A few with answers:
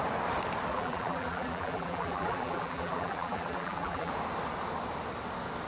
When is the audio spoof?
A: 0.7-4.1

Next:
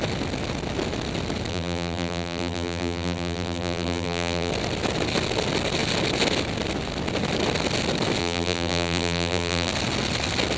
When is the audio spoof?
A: 1.5-4.5; 8.2-9.7

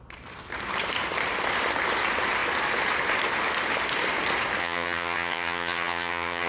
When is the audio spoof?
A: 4.6-6.5

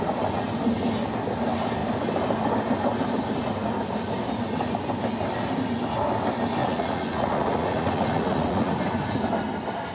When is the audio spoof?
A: 6.6-8.7

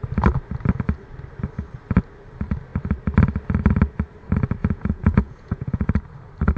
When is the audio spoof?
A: 4.6-5.9

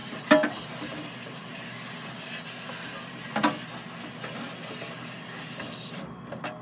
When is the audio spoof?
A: none